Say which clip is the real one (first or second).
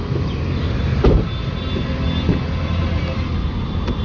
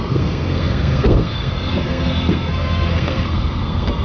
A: first